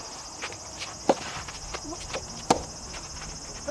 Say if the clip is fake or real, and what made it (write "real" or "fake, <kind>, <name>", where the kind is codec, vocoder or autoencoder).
real